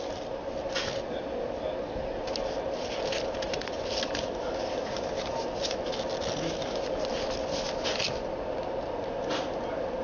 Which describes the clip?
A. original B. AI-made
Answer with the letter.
A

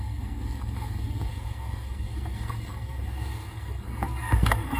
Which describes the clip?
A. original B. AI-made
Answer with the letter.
B